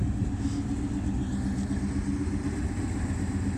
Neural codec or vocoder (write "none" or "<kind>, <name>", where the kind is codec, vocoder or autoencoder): none